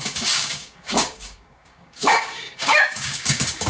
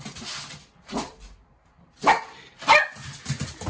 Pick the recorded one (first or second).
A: second